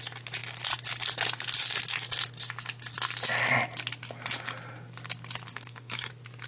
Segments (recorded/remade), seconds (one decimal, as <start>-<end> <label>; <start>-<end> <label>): 0.0-5.5 recorded; 5.5-6.1 remade; 6.1-6.5 recorded